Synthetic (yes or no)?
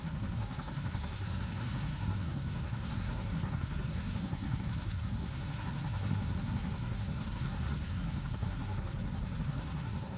yes